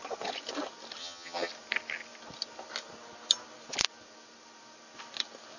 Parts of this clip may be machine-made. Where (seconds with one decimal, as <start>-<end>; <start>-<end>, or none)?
1.0-1.5